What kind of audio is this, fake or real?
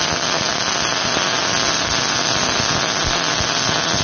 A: real